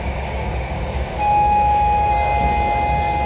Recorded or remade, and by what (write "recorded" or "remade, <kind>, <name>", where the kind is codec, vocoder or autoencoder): remade, codec, DAC